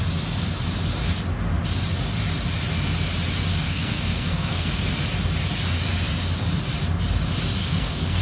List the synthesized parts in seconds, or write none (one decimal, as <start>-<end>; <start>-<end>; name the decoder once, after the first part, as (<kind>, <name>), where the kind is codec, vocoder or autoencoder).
3.5-4.9 (codec, SNAC); 7.6-8.2